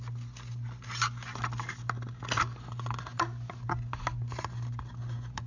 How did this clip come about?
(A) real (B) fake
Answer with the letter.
A